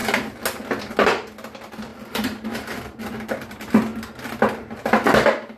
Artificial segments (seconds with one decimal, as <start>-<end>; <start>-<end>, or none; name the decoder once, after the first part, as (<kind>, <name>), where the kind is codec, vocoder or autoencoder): 0.9-3.9 (vocoder, BigVGAN v2)